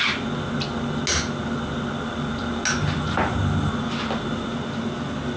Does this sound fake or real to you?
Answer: real